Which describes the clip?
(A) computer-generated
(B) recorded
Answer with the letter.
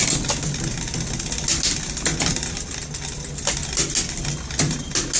B